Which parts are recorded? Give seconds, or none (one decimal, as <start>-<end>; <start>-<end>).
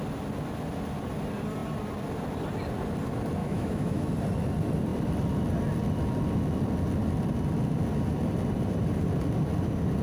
0.0-3.4; 4.1-10.0